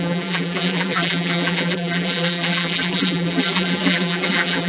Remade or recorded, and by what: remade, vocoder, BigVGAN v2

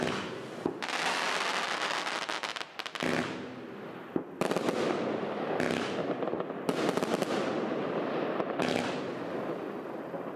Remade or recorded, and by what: recorded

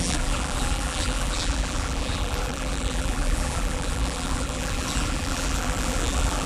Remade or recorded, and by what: remade, vocoder, BigVGAN v2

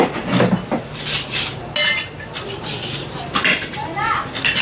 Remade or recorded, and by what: recorded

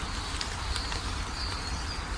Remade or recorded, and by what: recorded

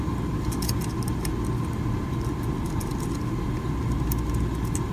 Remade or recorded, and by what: recorded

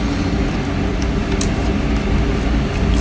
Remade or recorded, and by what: recorded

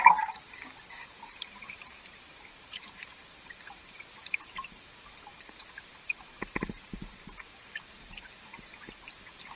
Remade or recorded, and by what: remade, vocoder, BigVGAN v2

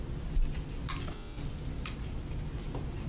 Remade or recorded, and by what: recorded